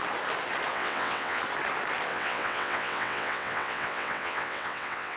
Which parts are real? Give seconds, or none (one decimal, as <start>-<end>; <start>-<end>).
0.0-0.7; 1.4-2.1